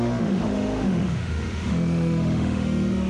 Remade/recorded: remade